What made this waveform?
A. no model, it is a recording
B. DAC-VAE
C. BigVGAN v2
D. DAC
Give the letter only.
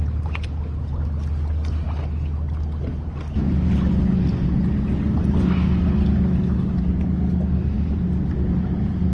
A